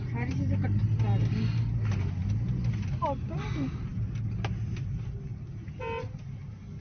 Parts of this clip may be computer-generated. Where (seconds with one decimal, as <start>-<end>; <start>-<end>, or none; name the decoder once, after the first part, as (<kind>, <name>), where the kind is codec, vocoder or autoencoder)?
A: none

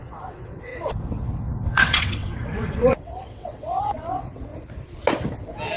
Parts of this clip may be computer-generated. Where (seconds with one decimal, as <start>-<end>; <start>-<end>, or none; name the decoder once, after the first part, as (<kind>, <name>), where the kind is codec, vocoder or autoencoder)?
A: 0.0-4.5 (vocoder, WaveNeXt)

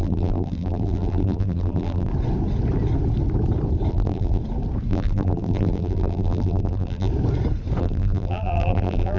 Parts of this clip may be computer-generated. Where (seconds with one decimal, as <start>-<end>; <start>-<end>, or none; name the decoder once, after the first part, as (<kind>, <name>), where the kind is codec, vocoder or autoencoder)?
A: 0.0-2.1 (vocoder, BigVGAN v2); 3.9-4.4; 4.9-7.1; 7.8-9.2